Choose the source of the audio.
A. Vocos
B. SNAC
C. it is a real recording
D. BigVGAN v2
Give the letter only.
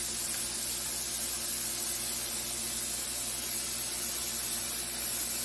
C